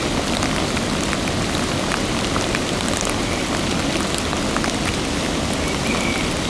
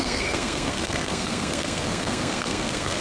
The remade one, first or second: second